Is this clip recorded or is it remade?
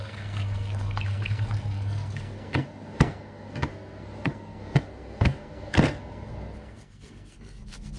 remade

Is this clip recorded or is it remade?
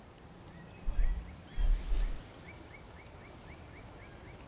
recorded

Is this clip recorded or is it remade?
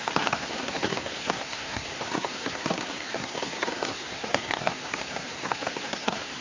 remade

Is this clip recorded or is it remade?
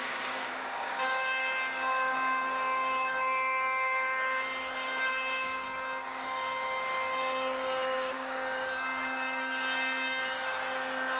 remade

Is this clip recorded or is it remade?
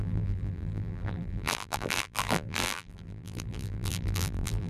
remade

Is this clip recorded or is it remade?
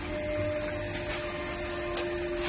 recorded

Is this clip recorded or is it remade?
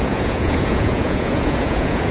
remade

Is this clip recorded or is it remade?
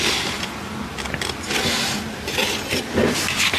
recorded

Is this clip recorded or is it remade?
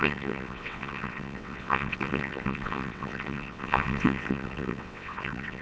remade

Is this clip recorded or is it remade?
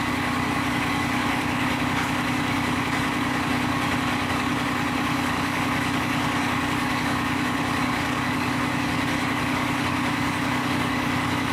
remade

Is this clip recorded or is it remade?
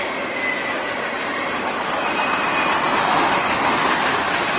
recorded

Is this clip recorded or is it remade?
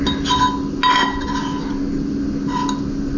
recorded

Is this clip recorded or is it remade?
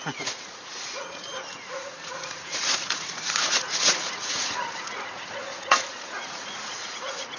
remade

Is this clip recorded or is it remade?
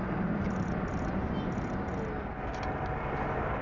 recorded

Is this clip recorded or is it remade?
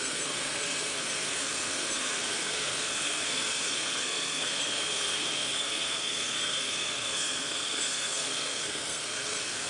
remade